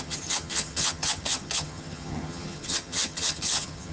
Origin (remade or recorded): remade